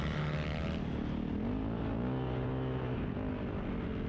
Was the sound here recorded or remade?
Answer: recorded